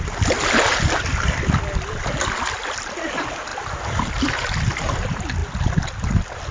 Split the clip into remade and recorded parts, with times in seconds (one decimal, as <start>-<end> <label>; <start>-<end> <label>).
0.0-6.5 recorded